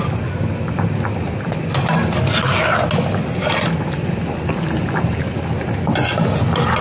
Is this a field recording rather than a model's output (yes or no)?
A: yes